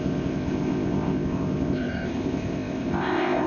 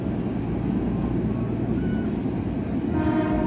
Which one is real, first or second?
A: second